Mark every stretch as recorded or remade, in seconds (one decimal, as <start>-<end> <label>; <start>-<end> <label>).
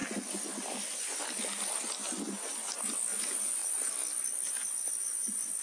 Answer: 0.0-5.6 recorded